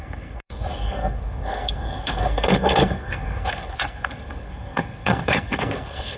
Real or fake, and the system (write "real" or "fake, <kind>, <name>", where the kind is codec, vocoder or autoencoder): fake, codec, SNAC